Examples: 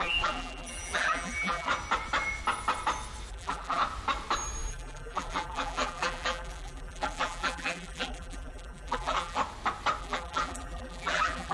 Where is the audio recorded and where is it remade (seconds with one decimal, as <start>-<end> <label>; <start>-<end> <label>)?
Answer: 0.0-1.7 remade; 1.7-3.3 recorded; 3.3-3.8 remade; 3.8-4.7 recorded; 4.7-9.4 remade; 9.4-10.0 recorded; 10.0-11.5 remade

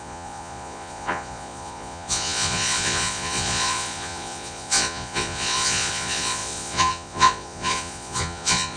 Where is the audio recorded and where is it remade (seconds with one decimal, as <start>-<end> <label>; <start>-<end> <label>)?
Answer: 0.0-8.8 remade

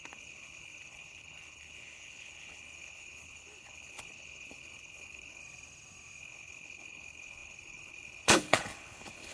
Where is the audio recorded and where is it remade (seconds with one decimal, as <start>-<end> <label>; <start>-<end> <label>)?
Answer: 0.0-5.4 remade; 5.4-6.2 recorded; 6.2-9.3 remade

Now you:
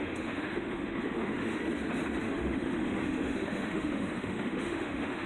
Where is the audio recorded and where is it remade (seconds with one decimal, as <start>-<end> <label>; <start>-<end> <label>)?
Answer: 0.0-1.6 remade; 1.6-2.2 recorded; 2.2-5.3 remade